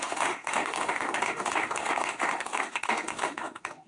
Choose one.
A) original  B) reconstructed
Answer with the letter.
B